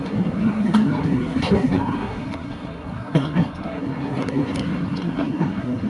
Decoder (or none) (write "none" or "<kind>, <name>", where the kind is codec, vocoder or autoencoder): codec, SNAC